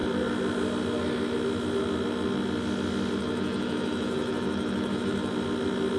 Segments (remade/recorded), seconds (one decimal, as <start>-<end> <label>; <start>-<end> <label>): 0.0-3.2 recorded; 3.2-5.3 remade; 5.3-6.0 recorded